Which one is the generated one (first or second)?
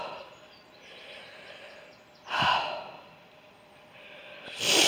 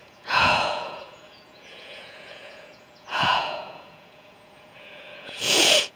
second